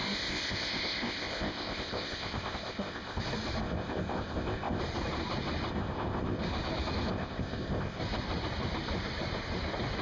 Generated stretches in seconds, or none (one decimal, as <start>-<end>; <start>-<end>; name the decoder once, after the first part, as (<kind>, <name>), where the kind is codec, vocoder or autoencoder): 0.0-3.2 (codec, ZipCodec); 3.6-4.8; 5.7-6.4; 7.1-8.0